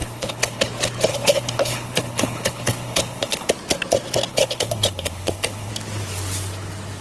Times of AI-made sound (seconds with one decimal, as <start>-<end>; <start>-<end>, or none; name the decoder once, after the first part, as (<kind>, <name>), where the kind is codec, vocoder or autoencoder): 0.0-0.6 (codec, HILCodec); 1.1-3.5; 4.3-5.7